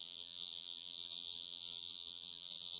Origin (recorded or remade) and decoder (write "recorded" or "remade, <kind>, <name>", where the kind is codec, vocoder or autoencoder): remade, vocoder, BigVGAN v2